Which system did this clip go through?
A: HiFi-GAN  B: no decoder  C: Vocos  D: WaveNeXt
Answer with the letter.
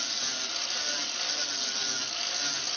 B